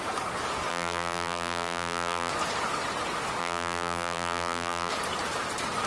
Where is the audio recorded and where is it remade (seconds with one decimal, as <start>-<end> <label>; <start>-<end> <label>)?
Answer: 0.0-0.7 recorded; 0.7-2.3 remade; 2.3-3.4 recorded; 3.4-4.9 remade; 4.9-5.9 recorded